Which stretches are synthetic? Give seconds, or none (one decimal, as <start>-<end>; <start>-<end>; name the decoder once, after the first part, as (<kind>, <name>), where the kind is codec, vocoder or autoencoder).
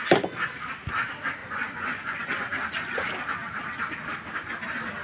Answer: 1.4-2.5 (vocoder, Vocos)